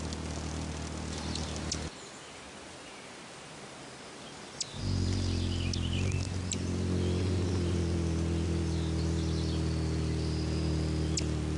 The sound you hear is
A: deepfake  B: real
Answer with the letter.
B